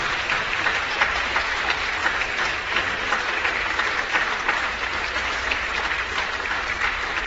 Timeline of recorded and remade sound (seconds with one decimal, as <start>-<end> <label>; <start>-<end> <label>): 0.0-2.0 remade; 2.0-3.2 recorded; 3.2-7.3 remade